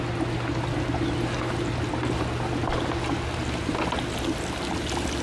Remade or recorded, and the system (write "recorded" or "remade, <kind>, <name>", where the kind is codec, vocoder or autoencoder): recorded